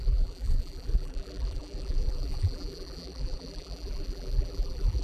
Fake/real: fake